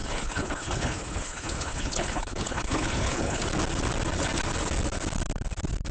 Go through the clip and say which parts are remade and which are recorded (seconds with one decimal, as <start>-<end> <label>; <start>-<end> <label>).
0.0-3.4 remade; 3.4-5.9 recorded